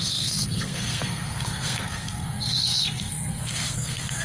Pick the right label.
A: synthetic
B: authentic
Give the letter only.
A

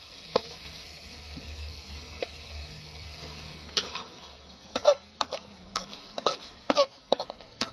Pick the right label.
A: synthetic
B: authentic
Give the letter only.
A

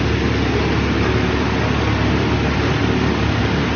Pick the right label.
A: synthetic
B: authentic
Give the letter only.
B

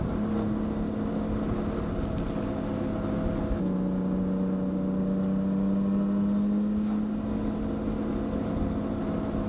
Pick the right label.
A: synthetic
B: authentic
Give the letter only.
B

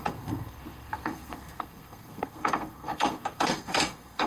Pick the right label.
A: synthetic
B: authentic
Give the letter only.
A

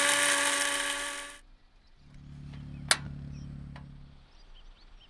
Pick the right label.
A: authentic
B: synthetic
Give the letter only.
A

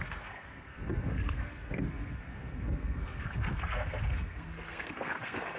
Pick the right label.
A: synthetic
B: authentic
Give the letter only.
A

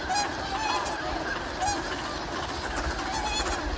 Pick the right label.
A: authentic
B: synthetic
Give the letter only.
A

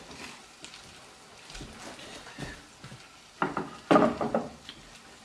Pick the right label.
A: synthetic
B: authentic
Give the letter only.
B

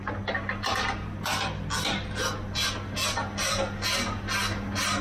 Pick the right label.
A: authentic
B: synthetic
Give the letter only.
A